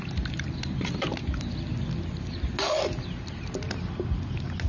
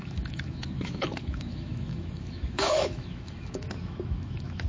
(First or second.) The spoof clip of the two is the second